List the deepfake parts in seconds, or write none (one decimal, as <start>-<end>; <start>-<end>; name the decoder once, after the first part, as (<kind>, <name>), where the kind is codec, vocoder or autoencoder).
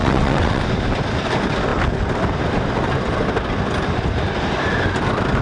0.0-0.6 (vocoder, WaveNeXt)